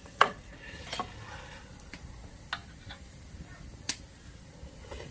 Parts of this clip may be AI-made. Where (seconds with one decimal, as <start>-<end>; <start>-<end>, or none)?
0.0-0.8